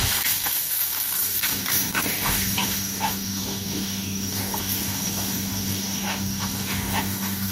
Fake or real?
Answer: fake